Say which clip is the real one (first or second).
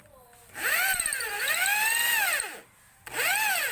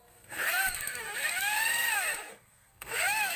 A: first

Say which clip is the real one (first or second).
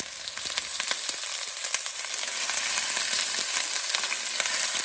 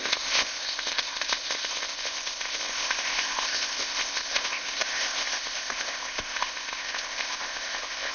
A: first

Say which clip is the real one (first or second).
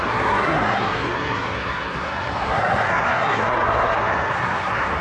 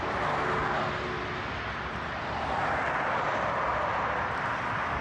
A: second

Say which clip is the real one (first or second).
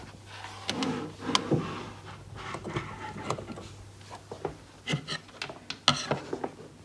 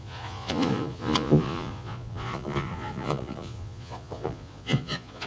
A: first